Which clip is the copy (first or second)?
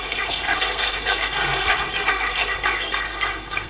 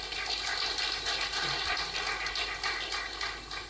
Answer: first